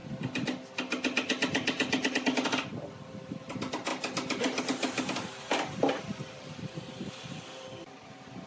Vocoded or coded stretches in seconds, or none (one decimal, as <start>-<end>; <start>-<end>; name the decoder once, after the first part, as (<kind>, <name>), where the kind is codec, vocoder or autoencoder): none